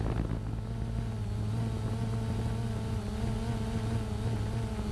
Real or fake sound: real